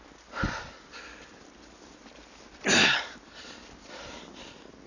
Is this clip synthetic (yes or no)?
no